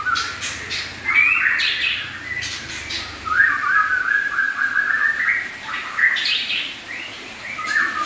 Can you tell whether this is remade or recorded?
recorded